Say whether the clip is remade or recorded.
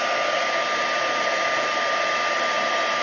recorded